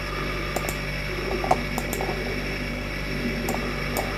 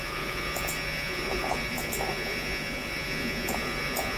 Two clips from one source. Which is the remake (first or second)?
second